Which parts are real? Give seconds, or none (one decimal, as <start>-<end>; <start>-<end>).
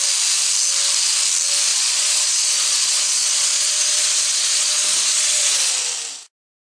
0.0-1.7; 5.7-6.6